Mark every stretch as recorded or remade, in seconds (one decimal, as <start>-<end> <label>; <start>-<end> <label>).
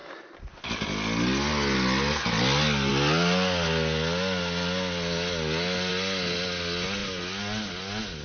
0.0-8.2 recorded